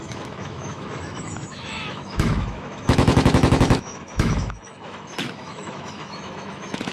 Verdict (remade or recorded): remade